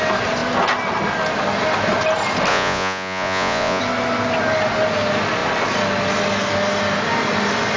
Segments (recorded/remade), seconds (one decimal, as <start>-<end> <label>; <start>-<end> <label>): 0.0-2.5 recorded; 2.5-3.8 remade; 3.8-7.8 recorded